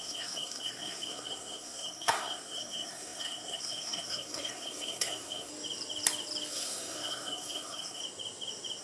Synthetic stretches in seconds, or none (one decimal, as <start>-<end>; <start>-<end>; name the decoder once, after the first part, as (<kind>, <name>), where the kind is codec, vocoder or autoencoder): 0.0-5.5 (codec, SNAC); 6.5-8.0